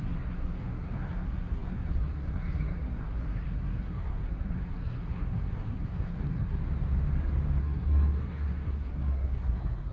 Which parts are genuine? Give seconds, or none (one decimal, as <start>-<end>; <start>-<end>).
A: 6.6-7.6